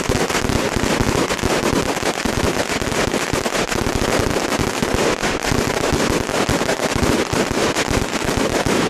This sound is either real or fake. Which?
real